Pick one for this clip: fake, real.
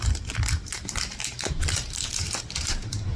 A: fake